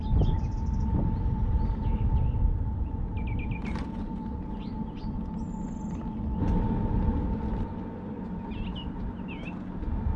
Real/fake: real